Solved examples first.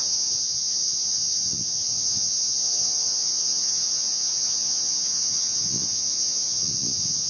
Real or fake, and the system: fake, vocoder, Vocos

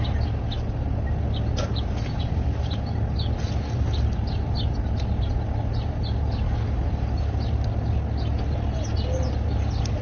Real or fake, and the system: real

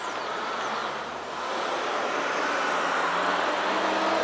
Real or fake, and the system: real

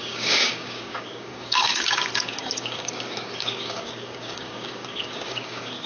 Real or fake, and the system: fake, codec, DAC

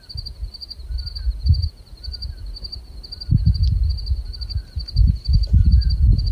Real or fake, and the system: real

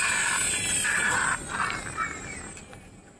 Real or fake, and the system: real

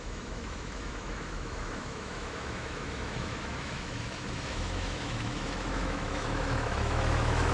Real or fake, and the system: fake, autoencoder, DAC-VAE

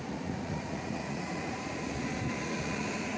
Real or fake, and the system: fake, vocoder, Vocos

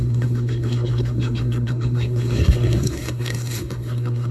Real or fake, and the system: fake, codec, SNAC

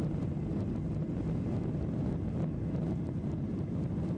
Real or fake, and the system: real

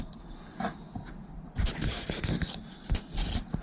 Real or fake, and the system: real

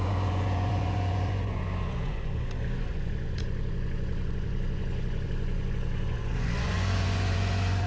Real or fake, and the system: fake, vocoder, Vocos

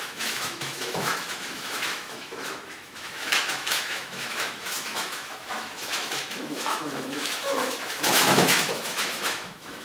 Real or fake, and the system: fake, autoencoder, DAC-VAE